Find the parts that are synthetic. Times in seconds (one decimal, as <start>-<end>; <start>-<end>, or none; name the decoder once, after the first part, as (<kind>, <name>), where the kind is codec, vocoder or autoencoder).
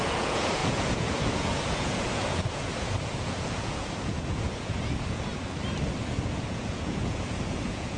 0.0-5.3 (vocoder, Vocos); 6.2-8.0